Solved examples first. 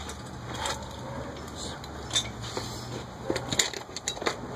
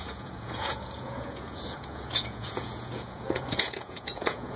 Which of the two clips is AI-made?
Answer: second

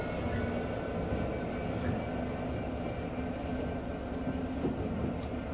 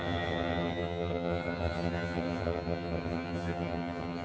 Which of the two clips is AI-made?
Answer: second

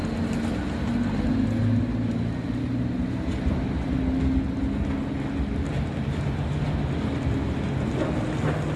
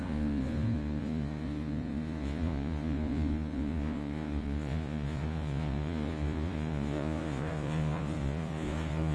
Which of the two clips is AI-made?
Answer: second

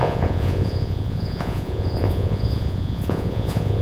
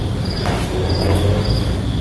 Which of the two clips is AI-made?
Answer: first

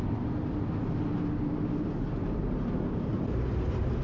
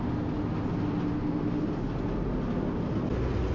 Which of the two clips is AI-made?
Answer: first